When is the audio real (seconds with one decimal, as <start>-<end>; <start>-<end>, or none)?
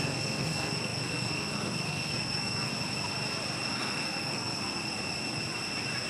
2.7-3.7; 4.8-6.1